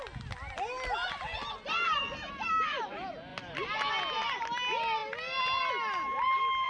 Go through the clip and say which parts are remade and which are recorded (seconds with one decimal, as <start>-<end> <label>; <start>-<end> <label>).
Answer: 0.0-6.7 recorded